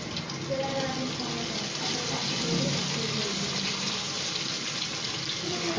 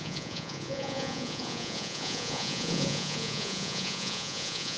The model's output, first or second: second